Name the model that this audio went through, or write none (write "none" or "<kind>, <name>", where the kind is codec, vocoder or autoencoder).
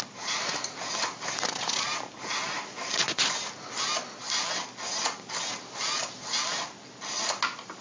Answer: none